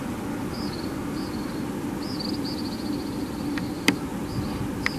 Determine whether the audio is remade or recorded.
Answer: recorded